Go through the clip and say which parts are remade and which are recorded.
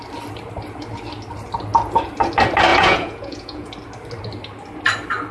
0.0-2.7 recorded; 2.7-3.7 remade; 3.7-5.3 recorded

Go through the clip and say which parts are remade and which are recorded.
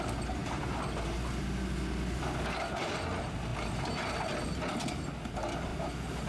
0.0-6.3 recorded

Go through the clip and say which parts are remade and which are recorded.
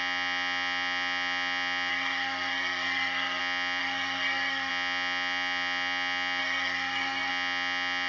0.0-1.9 recorded; 1.9-3.4 remade; 3.4-3.8 recorded; 3.8-4.7 remade; 4.7-6.4 recorded; 6.4-7.3 remade; 7.3-8.1 recorded